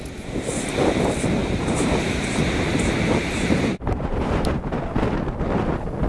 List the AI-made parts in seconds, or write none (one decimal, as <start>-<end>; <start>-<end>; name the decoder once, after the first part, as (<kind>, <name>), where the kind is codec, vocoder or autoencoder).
1.4-4.6 (vocoder, BigVGAN v2)